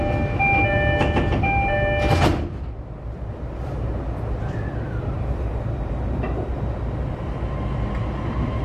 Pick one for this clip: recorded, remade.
recorded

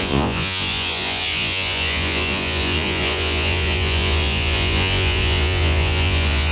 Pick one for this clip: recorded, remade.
remade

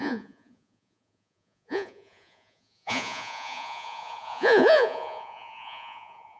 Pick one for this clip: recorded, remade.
remade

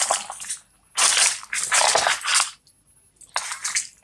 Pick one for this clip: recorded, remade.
recorded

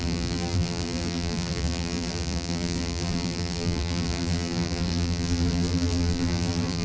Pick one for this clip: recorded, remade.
remade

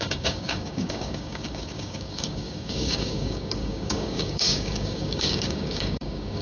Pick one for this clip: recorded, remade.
remade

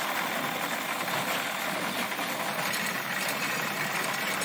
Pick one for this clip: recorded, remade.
recorded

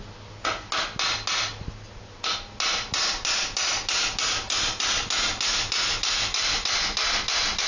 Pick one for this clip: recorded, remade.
recorded